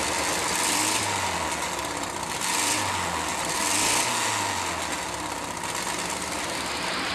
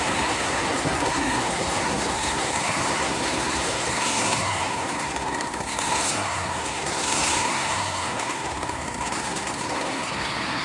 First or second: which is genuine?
first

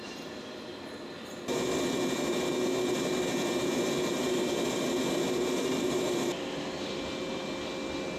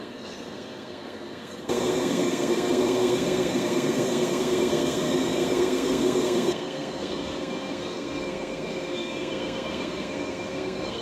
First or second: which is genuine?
first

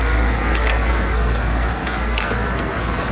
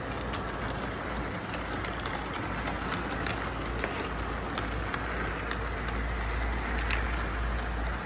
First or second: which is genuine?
second